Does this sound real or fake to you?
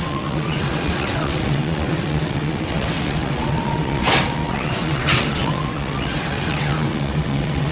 fake